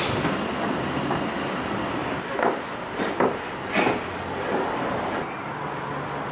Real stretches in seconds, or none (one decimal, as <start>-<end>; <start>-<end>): 0.0-6.3